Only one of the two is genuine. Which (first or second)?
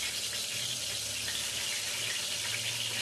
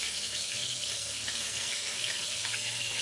first